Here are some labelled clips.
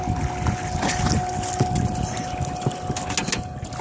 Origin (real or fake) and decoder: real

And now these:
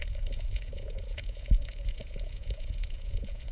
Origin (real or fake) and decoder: fake, vocoder, Vocos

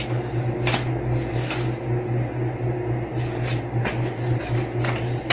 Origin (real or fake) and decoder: real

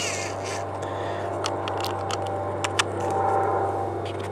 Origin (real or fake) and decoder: real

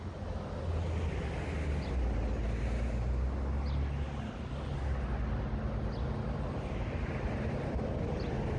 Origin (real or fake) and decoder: real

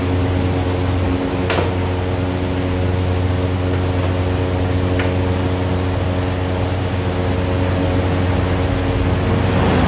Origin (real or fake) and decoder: real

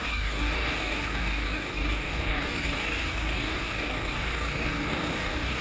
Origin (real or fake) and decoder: fake, codec, DAC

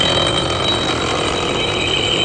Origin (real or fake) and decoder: real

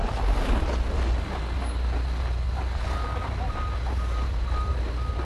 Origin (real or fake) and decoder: real